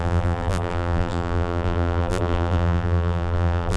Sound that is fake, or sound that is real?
fake